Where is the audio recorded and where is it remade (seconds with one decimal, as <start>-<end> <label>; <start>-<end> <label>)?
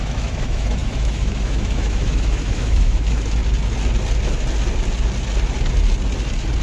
0.0-3.4 remade; 3.4-6.6 recorded